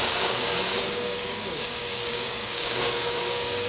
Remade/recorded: remade